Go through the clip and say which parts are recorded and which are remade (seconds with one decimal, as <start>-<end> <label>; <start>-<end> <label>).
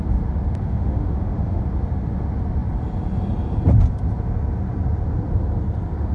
0.0-0.6 recorded; 0.6-1.6 remade; 1.6-6.1 recorded